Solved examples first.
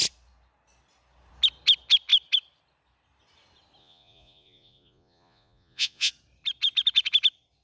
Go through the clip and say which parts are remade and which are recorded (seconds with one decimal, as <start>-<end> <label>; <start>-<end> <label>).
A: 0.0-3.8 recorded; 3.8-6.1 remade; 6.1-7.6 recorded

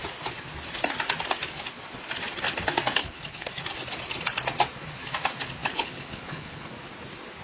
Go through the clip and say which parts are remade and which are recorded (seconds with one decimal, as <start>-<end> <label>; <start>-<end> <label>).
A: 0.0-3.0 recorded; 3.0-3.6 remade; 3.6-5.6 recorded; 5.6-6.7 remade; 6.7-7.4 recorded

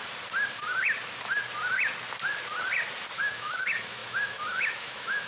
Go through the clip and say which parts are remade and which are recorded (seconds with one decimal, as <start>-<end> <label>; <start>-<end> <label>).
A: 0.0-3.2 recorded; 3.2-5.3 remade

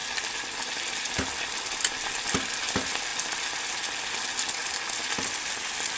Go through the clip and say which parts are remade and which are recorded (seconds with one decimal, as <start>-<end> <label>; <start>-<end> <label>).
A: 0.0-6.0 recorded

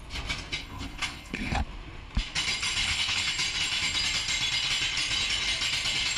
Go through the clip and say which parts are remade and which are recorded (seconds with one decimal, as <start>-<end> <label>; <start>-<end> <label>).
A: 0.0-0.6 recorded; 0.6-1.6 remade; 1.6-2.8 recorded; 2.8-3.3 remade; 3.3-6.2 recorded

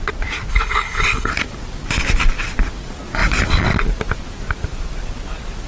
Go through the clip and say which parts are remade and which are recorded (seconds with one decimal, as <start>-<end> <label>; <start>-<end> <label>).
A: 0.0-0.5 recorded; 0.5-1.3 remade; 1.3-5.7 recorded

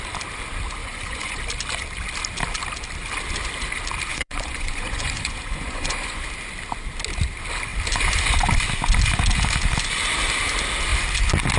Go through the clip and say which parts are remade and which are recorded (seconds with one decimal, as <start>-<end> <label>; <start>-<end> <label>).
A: 0.0-0.8 recorded; 0.8-1.4 remade; 1.4-4.1 recorded; 4.1-6.2 remade; 6.2-11.6 recorded

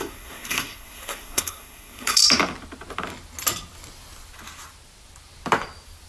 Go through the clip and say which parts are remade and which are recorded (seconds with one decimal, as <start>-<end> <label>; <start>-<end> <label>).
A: 0.0-2.2 remade; 2.2-6.1 recorded